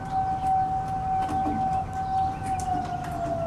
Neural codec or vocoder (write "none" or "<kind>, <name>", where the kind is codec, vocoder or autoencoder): none